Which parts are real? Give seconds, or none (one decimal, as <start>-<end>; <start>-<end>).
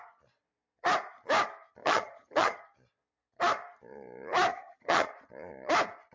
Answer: 0.0-1.8; 2.6-4.5; 5.1-6.1